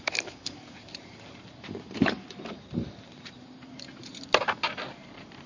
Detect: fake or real fake